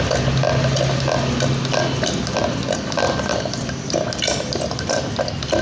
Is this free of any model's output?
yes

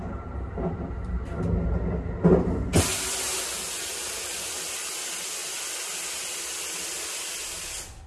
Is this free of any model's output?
yes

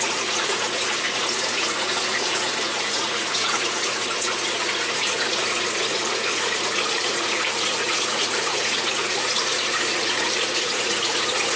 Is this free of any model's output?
no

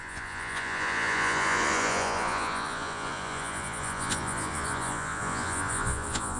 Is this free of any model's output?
no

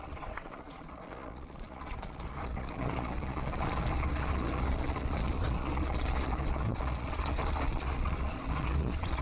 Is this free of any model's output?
no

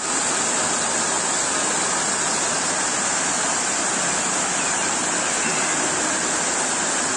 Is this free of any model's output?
yes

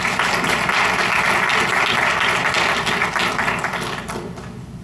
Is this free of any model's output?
yes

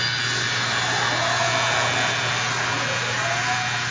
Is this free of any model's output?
yes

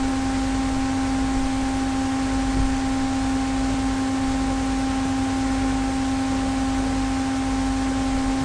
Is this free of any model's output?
yes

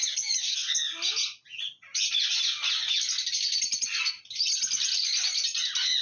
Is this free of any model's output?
yes